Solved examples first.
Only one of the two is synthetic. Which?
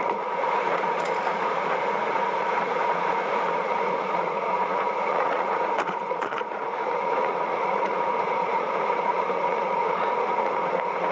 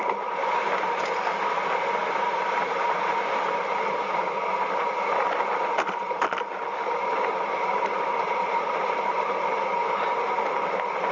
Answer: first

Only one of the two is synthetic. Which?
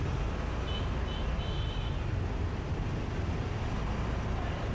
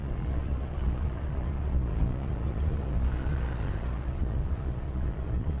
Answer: second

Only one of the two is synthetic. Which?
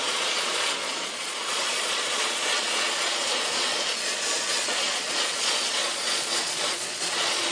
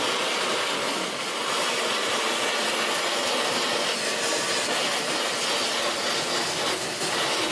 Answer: first